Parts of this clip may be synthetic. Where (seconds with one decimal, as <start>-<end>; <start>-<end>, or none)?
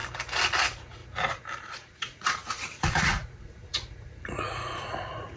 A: 0.6-1.0; 1.6-5.4